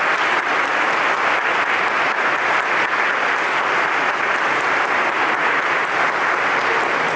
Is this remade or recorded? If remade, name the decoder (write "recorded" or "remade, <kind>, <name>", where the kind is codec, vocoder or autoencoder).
recorded